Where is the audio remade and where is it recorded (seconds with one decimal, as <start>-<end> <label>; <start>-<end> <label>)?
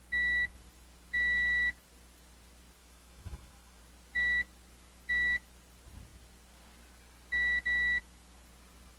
0.0-2.8 recorded; 2.8-3.8 remade; 3.8-9.0 recorded